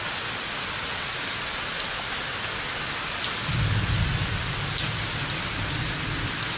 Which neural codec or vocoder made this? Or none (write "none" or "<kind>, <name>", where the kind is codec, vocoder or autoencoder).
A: none